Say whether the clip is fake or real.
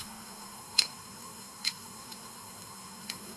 fake